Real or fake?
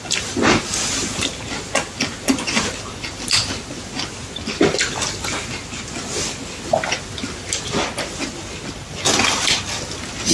real